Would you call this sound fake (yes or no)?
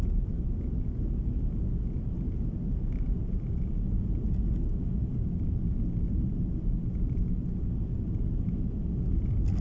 no